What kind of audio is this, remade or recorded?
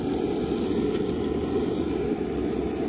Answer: recorded